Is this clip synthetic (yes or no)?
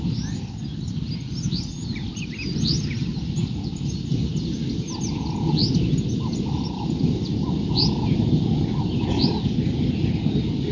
no